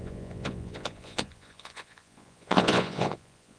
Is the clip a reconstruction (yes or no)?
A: yes